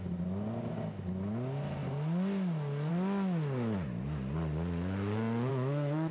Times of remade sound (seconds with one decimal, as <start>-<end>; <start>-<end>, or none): 5.5-6.1

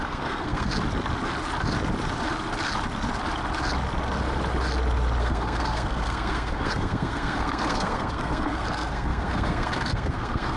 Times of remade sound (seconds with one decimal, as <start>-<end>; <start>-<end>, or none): 0.0-0.7; 5.2-10.6

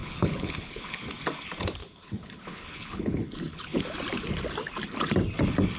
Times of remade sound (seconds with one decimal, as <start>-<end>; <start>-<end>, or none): 0.0-1.0; 1.8-3.8

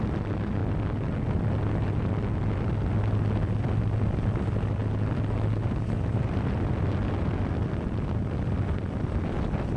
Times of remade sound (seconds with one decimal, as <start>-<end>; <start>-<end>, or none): none